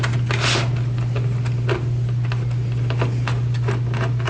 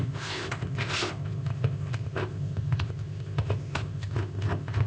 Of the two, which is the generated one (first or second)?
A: second